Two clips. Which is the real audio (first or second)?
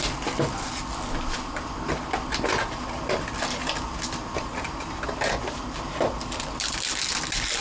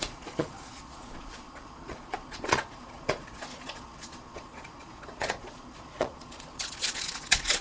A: first